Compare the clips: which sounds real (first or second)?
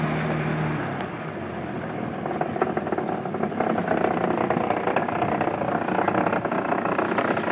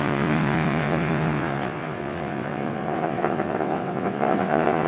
first